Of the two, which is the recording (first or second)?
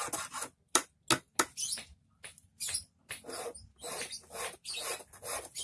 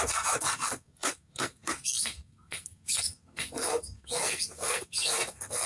first